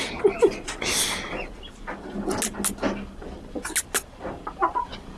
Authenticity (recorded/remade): recorded